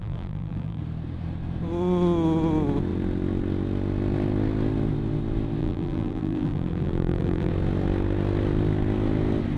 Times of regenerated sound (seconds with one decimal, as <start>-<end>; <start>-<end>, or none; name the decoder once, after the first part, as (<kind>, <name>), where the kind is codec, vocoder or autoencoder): 0.0-0.8 (vocoder, BigVGAN v2); 5.6-7.5